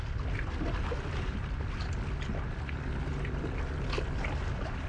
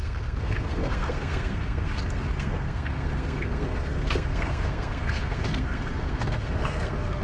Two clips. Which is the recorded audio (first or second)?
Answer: first